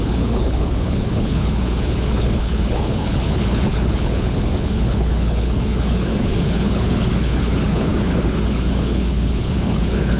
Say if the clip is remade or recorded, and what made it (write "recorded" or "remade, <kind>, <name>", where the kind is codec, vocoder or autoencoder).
remade, codec, HILCodec